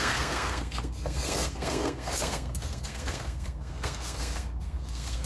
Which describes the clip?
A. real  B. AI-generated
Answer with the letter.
B